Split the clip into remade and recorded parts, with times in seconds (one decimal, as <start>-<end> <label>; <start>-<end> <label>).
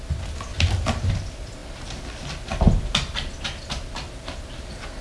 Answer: 0.0-0.5 recorded; 0.5-1.1 remade; 1.1-5.0 recorded